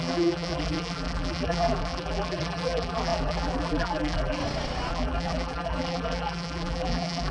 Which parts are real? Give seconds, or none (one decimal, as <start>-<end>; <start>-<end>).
4.4-4.9